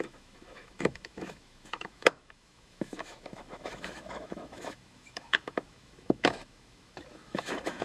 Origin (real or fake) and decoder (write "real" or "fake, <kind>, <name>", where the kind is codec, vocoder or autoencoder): fake, autoencoder, DAC-VAE